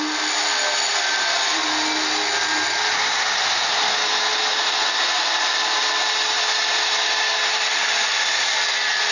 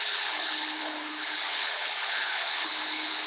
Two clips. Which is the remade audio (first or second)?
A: second